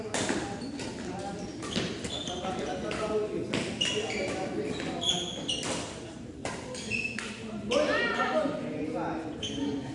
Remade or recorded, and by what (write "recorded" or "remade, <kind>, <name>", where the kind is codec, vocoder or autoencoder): recorded